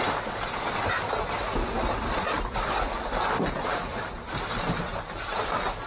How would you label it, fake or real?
fake